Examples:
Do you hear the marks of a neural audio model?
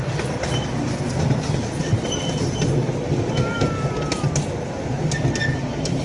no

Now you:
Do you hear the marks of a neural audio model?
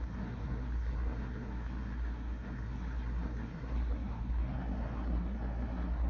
yes